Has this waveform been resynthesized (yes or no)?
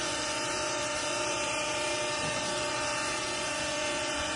yes